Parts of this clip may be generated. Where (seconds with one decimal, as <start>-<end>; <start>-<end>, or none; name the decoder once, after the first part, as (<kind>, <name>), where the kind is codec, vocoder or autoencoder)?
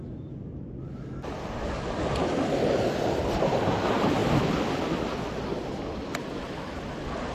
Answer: none